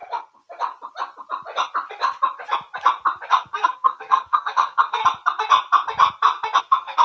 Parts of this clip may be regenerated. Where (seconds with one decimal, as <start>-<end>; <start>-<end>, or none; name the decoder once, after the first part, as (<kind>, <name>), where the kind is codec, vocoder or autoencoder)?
3.3-5.0 (codec, SNAC); 6.6-7.0